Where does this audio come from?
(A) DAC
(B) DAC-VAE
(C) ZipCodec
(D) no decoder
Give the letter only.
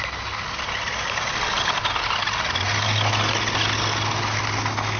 D